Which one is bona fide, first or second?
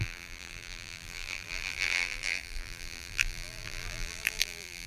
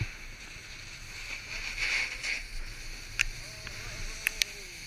second